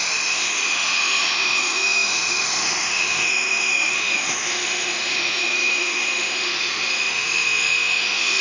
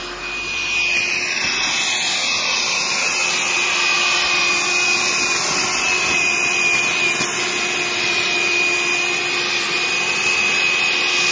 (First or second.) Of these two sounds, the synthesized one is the first